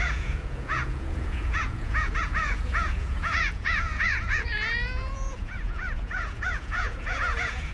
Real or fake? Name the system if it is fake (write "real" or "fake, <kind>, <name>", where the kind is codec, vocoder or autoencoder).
fake, vocoder, Vocos